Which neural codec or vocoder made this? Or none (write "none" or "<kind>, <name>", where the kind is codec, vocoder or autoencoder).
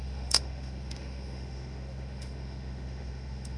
autoencoder, DAC-VAE